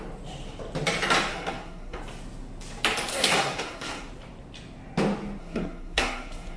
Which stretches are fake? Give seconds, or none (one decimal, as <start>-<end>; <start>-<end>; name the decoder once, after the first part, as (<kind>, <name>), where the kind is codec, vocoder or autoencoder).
1.3-2.0 (codec, SNAC); 3.1-4.1; 5.4-6.6